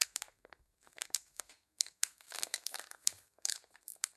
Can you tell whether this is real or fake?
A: fake